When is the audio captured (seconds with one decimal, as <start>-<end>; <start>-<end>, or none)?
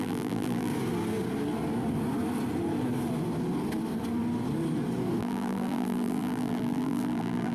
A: 0.7-5.2